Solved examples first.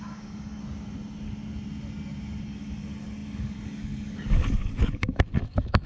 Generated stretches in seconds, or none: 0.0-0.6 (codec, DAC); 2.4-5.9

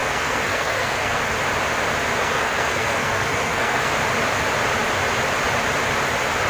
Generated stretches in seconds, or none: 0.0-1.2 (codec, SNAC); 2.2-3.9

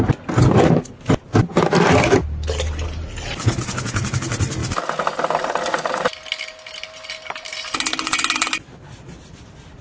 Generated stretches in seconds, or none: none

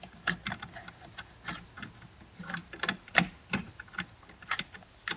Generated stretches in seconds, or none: none